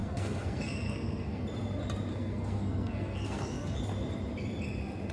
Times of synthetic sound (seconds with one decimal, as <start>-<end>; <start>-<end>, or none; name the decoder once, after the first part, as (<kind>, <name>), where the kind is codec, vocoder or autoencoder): 0.0-1.4 (codec, SNAC); 2.1-3.8